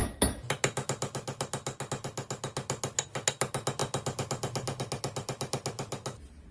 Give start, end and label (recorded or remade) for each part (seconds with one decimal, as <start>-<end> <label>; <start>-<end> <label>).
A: 0.0-6.5 recorded